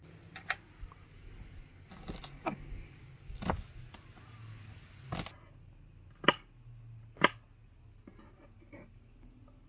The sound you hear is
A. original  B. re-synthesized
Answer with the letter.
A